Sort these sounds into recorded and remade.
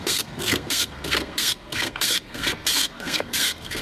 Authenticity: remade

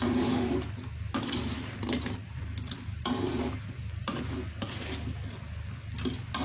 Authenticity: recorded